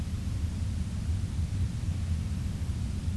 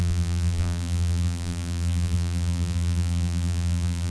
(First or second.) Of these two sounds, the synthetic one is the second